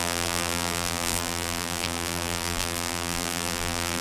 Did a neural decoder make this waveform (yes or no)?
yes